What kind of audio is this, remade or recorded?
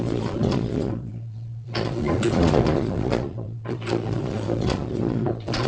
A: remade